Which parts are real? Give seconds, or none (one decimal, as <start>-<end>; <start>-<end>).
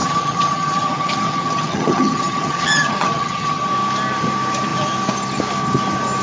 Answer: 3.7-6.2